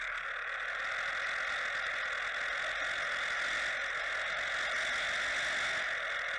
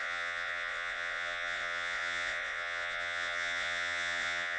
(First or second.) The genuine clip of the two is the first